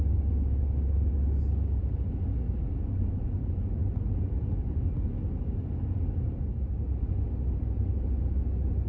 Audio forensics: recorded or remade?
recorded